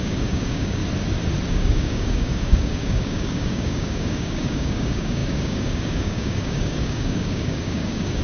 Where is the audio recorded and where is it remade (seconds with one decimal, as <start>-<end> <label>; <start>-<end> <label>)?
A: 0.0-0.8 remade; 0.8-1.5 recorded; 1.5-8.2 remade